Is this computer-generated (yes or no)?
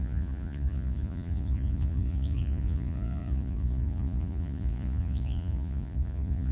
yes